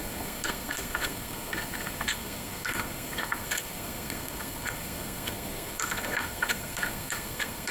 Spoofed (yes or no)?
yes